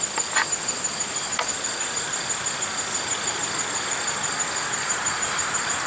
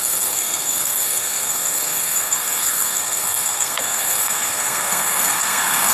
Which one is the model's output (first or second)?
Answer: second